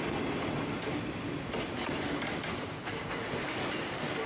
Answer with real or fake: real